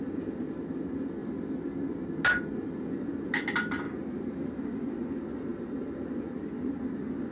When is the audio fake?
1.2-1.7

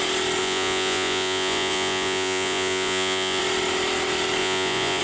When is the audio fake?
0.4-3.4; 4.4-5.0

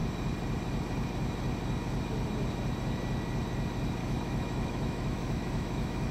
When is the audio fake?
4.0-6.1

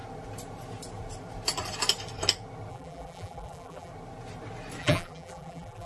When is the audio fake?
2.7-3.9; 4.8-5.9

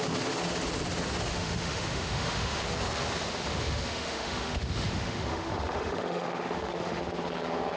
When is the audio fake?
1.3-2.6; 3.5-7.0

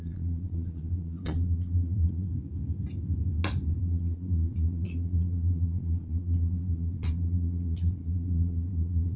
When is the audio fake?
0.0-2.3; 3.8-9.2

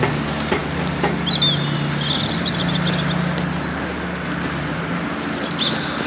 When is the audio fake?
none